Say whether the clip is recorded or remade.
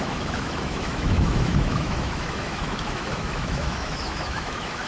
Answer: remade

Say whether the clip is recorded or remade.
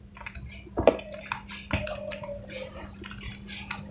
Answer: remade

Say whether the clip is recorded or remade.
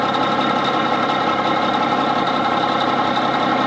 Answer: recorded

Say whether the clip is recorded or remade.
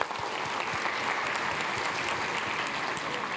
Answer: recorded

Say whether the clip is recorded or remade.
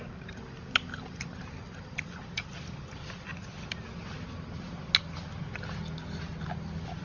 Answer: recorded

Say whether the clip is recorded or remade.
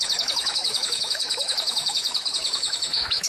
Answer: remade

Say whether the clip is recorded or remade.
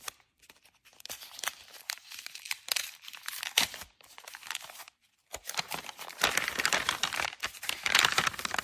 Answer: remade